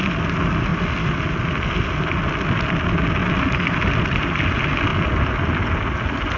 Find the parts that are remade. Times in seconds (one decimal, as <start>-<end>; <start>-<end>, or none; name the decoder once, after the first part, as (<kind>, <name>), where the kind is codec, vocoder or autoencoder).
none